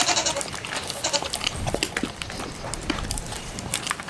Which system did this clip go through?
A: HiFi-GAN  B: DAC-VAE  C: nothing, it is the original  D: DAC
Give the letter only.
C